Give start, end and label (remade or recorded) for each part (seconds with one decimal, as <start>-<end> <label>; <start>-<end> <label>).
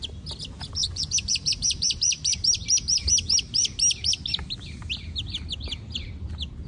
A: 0.0-0.8 recorded; 0.8-2.3 remade; 2.3-6.7 recorded